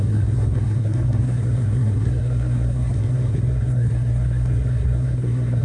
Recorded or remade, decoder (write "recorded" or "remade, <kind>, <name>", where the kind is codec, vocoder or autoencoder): remade, codec, SNAC